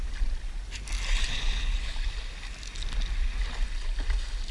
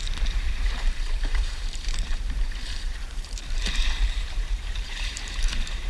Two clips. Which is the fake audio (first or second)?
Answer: second